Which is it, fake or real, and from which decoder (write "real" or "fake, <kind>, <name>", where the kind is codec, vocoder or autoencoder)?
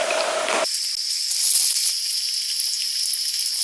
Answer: real